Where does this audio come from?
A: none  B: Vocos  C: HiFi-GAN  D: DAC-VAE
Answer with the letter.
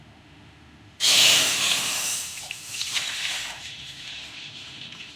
D